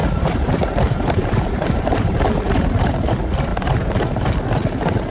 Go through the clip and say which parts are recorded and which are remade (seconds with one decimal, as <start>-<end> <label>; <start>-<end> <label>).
0.0-3.1 remade; 3.1-3.5 recorded; 3.5-4.1 remade; 4.1-5.1 recorded